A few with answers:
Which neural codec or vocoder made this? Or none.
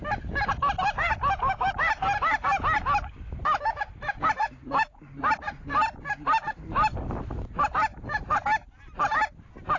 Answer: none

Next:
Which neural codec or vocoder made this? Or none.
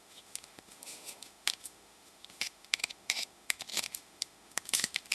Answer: autoencoder, DAC-VAE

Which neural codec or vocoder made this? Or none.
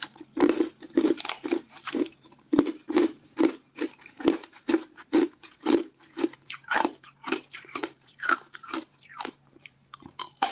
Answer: vocoder, BigVGAN v2